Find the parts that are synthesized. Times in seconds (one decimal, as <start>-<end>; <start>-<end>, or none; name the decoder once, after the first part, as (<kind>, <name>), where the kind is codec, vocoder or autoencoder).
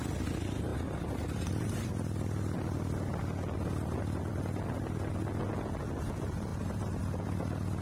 0.7-1.9 (vocoder, BigVGAN v2); 6.5-7.0